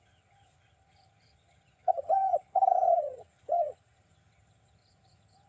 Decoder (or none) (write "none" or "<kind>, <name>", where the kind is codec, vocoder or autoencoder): vocoder, HiFi-GAN